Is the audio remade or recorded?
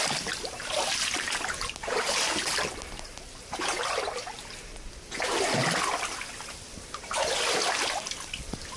recorded